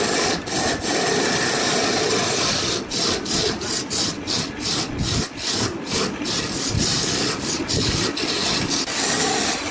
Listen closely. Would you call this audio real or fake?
real